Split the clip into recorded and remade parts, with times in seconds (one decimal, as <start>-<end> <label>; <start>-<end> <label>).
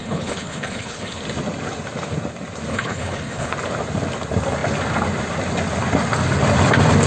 0.0-1.2 remade; 1.2-2.7 recorded; 2.7-3.5 remade; 3.5-7.1 recorded